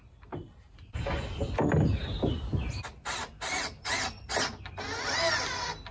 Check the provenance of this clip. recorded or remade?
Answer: recorded